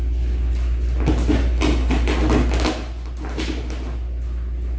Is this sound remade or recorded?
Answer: recorded